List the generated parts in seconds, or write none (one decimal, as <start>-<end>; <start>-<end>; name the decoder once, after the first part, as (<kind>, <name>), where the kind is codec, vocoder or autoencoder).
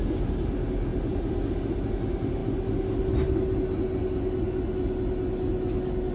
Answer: none